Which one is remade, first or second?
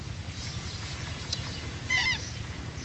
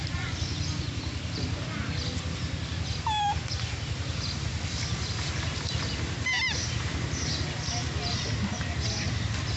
first